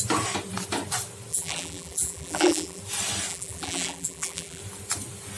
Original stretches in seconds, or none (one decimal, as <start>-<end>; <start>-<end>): 0.0-1.3; 2.8-3.3; 4.6-5.4